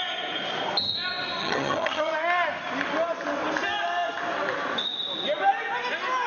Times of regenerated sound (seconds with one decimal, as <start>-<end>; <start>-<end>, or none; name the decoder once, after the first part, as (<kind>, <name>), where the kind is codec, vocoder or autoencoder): 1.4-2.1 (vocoder, HiFi-GAN)